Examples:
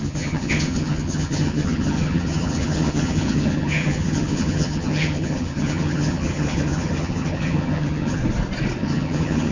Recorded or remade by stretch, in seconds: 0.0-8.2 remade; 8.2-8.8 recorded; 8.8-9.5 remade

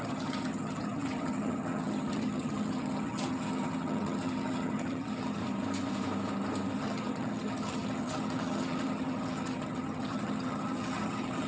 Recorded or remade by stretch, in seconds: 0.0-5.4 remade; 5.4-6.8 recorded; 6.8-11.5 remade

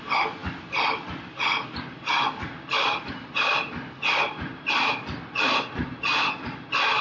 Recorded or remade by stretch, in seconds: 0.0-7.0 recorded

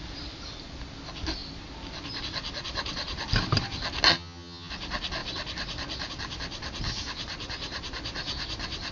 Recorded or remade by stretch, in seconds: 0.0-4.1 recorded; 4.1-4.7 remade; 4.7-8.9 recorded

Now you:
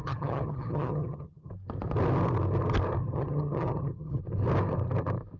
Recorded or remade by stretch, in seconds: 0.0-1.5 remade; 1.5-3.0 recorded; 3.0-4.2 remade; 4.2-5.4 recorded

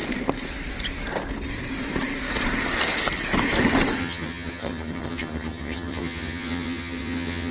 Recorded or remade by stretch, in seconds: 0.0-4.0 recorded; 4.0-7.5 remade